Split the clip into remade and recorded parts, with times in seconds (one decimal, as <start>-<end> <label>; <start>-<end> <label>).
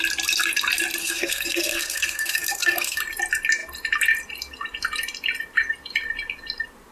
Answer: 0.0-1.0 recorded; 1.0-3.0 remade; 3.0-6.9 recorded